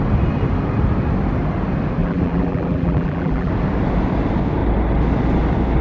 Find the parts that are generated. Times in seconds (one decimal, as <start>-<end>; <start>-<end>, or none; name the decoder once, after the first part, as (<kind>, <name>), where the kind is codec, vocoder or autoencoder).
2.0-3.5 (vocoder, BigVGAN v2)